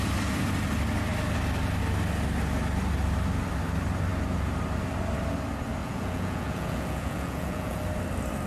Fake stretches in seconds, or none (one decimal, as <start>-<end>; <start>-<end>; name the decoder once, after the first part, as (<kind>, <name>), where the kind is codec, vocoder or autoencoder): 5.8-7.8 (vocoder, Vocos)